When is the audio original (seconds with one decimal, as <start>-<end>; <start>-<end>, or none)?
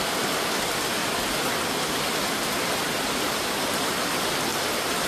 0.0-5.1